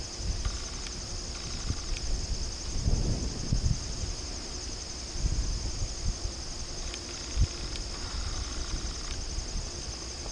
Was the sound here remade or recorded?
recorded